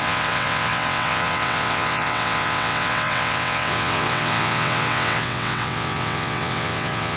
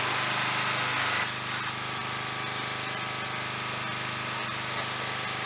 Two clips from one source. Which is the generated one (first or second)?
first